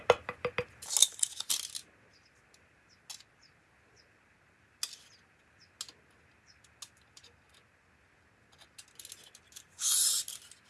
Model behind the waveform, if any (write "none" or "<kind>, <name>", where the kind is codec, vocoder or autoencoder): none